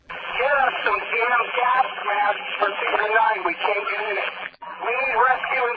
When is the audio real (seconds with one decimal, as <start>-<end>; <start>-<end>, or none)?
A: none